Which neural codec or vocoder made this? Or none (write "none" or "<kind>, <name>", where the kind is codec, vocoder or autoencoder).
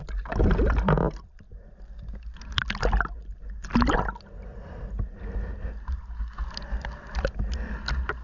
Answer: none